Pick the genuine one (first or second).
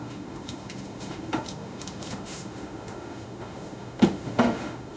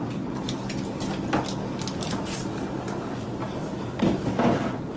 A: second